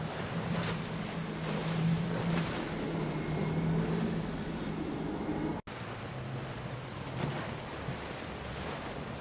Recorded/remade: recorded